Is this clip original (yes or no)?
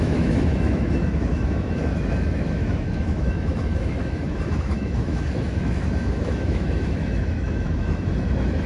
no